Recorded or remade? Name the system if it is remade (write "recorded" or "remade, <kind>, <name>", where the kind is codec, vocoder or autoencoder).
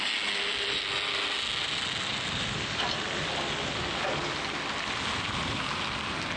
recorded